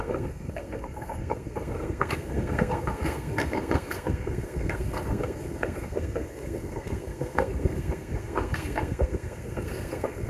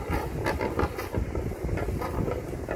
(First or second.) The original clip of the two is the second